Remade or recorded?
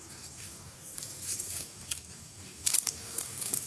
remade